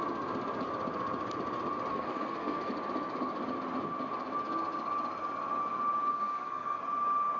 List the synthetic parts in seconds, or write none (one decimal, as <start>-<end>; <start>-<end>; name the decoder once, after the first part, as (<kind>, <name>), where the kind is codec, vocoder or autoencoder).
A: 1.9-2.7 (codec, SNAC); 6.1-6.8